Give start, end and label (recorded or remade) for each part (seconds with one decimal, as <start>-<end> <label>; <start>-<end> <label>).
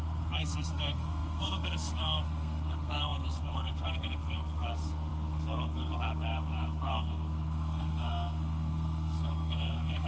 0.0-10.1 remade